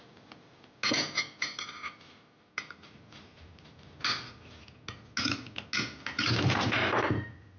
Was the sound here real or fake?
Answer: real